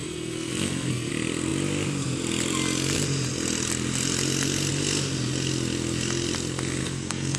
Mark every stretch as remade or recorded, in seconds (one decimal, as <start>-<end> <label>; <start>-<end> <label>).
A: 0.0-1.1 remade; 1.1-6.8 recorded; 6.8-7.4 remade